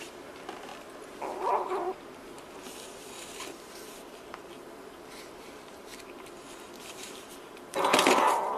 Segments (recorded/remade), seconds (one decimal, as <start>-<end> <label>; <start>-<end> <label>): 0.0-0.7 remade; 0.7-5.2 recorded; 5.2-5.9 remade; 5.9-6.9 recorded; 6.9-8.6 remade